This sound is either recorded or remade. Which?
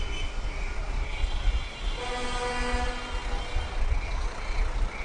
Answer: recorded